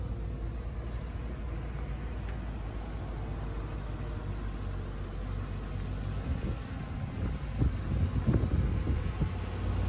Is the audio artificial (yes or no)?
no